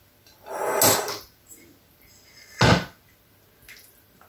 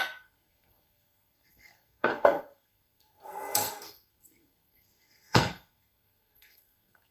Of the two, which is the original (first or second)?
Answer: first